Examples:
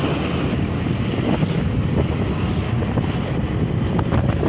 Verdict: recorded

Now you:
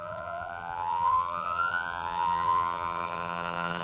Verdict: remade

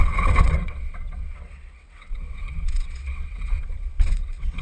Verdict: remade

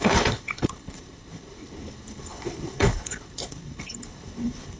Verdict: remade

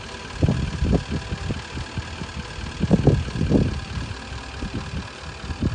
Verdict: recorded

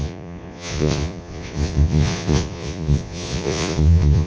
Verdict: remade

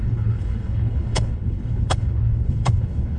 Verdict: remade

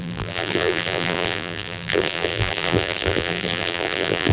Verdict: remade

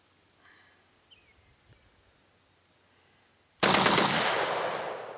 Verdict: recorded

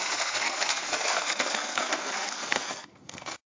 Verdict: remade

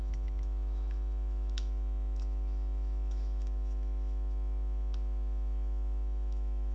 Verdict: remade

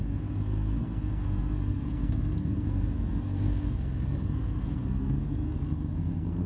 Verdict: remade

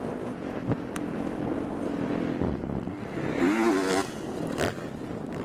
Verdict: recorded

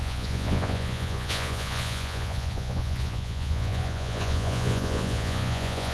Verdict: remade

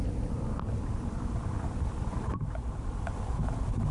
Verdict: recorded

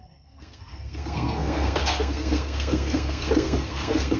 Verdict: remade